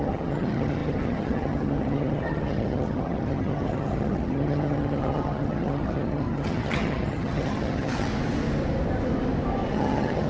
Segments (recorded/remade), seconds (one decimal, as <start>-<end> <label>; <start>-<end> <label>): 0.0-8.1 remade; 8.1-9.7 recorded; 9.7-10.3 remade